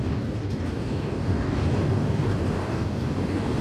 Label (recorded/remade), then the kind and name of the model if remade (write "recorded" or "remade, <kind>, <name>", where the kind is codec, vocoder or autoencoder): remade, codec, DAC